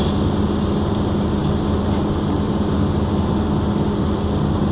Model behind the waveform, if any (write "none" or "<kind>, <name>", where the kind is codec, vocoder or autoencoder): none